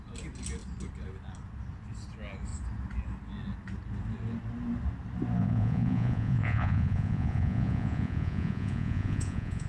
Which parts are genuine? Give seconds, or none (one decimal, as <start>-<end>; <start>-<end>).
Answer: 0.0-5.4